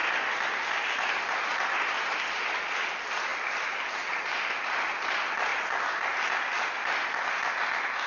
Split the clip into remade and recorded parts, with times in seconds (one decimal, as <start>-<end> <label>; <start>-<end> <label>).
0.0-8.1 recorded